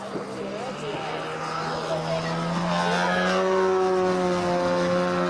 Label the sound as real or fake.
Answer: real